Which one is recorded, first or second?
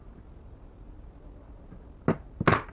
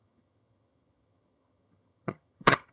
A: first